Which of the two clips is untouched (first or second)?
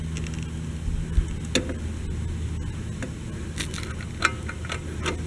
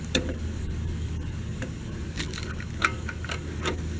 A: first